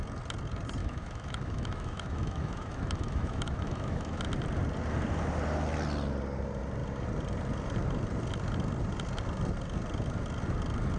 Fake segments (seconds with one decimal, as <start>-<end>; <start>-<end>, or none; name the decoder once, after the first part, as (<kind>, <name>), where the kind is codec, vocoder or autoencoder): 0.8-4.2 (autoencoder, DAC-VAE)